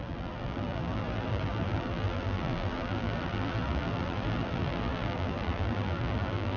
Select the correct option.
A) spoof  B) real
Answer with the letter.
A